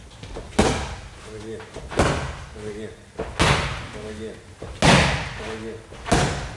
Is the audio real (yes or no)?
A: yes